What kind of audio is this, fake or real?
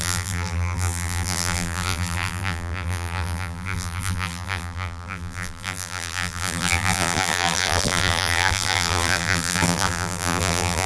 fake